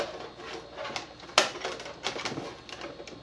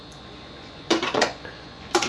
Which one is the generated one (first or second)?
second